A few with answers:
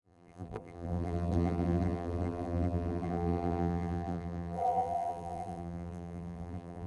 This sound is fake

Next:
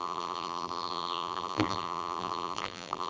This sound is fake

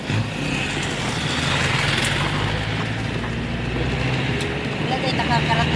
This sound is real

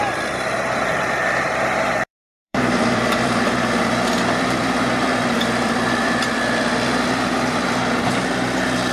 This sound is fake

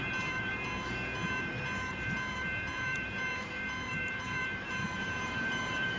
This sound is fake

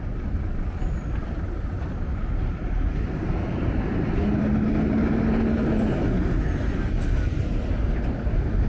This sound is fake